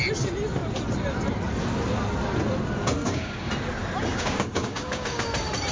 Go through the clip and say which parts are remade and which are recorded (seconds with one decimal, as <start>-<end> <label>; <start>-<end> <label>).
0.0-3.0 recorded; 3.0-3.5 remade; 3.5-4.1 recorded; 4.1-5.3 remade; 5.3-5.7 recorded